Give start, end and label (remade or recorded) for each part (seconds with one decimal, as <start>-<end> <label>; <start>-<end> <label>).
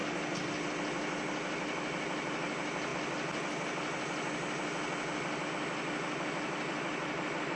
0.0-7.6 recorded